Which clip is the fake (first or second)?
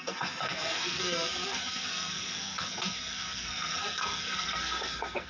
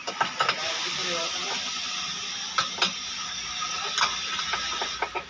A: first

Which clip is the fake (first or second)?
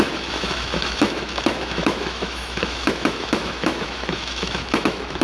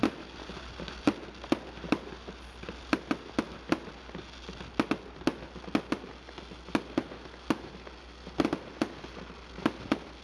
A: first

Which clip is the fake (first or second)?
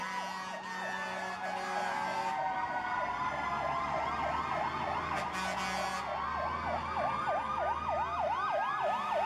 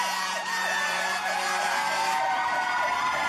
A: second